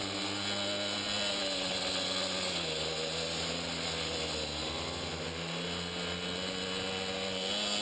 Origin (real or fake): real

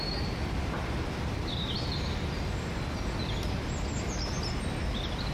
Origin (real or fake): real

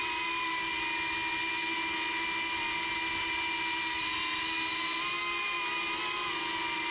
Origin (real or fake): real